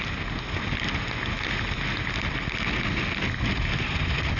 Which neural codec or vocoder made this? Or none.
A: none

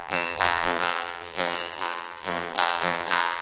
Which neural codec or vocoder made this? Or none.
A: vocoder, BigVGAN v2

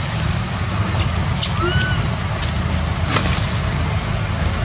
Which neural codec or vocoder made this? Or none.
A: none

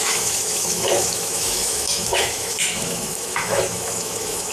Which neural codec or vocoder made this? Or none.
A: autoencoder, DAC-VAE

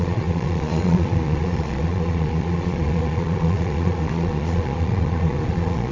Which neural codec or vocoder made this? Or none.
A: vocoder, Vocos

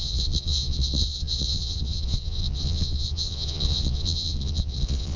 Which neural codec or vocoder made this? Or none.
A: vocoder, Vocos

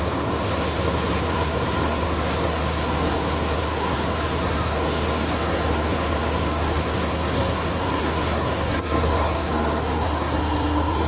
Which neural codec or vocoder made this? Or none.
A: codec, SNAC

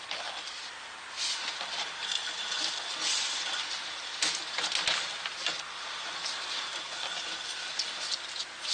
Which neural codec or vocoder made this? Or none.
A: none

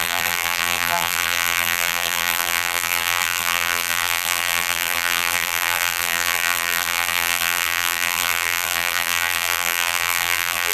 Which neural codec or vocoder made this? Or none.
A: vocoder, BigVGAN v2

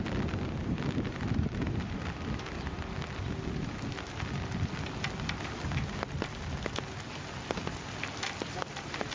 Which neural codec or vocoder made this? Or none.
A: none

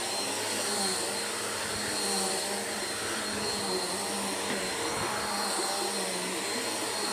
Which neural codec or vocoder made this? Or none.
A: none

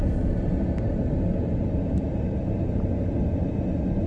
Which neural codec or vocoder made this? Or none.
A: none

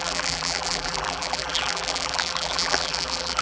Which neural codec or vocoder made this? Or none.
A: vocoder, BigVGAN v2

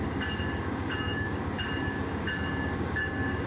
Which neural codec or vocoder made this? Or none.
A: codec, DAC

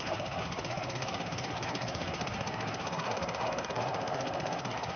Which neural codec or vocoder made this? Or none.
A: codec, SNAC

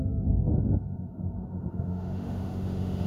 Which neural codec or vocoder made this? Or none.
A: autoencoder, DAC-VAE